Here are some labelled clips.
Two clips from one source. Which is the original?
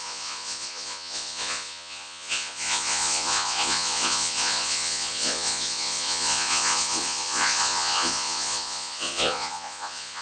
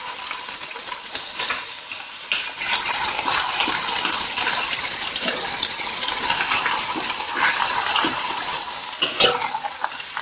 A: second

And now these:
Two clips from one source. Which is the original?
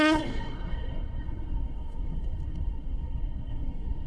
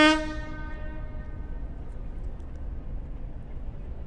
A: second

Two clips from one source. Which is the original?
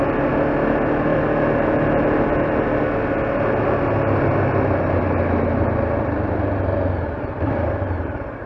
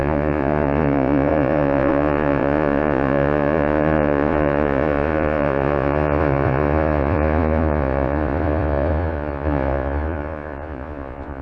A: first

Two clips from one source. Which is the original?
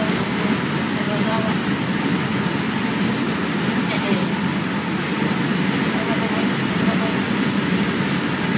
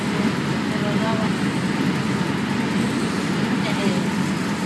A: second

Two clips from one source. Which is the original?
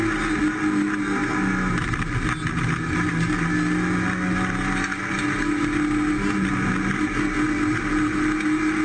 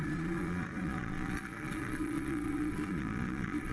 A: first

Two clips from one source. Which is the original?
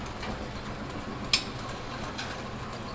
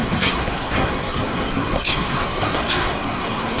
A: first